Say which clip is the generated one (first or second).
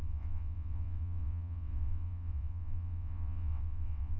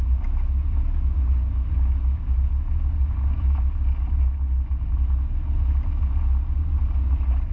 first